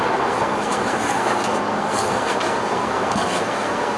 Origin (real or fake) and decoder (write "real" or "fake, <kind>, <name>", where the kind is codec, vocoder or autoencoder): fake, codec, SNAC